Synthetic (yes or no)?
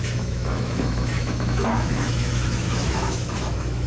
yes